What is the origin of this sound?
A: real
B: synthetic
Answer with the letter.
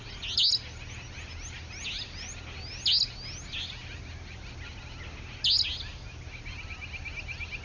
A